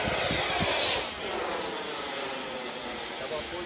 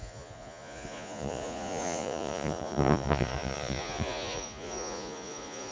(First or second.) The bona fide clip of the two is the first